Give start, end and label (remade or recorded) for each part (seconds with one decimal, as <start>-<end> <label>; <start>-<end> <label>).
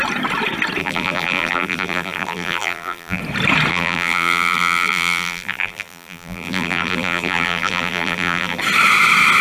0.0-0.8 recorded; 0.8-3.2 remade; 3.2-3.7 recorded; 3.7-8.6 remade; 8.6-9.4 recorded